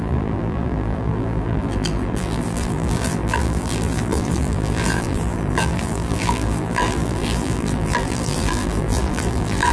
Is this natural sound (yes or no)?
no